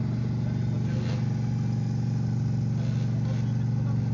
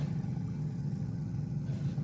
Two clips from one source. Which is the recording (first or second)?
first